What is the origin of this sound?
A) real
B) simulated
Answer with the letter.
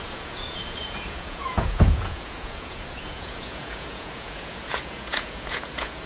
B